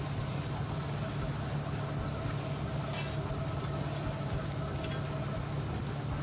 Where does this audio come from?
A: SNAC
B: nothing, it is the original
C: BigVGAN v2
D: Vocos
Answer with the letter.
B